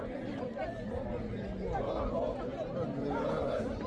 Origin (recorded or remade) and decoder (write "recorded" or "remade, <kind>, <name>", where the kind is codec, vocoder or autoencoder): recorded